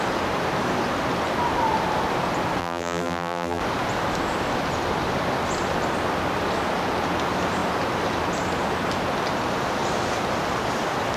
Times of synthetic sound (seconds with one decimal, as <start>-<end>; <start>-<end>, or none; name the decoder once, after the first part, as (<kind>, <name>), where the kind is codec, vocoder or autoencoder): 2.6-3.6 (vocoder, BigVGAN v2)